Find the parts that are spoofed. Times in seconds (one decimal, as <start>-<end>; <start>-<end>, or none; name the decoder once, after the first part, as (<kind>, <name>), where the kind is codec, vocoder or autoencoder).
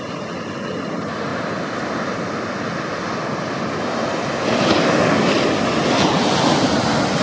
none